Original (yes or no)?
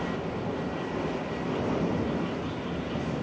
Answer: yes